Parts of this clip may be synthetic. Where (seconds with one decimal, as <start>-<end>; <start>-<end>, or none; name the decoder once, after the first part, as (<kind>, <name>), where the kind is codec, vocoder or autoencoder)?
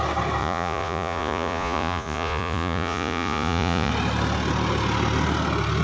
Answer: 0.4-3.9 (vocoder, Vocos)